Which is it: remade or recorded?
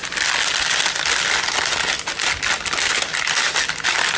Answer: recorded